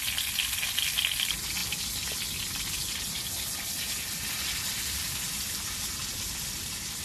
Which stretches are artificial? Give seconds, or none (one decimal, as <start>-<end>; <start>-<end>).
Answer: none